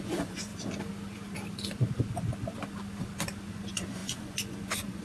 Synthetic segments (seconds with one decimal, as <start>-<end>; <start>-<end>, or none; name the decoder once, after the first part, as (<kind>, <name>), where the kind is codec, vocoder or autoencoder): 0.0-0.5 (vocoder, Vocos); 3.5-5.0